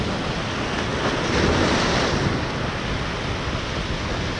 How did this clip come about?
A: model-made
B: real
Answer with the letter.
B